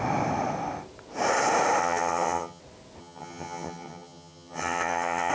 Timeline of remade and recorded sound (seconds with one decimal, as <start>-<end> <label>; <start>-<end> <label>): 0.0-1.8 recorded; 1.8-2.6 remade; 2.6-3.0 recorded; 3.0-5.3 remade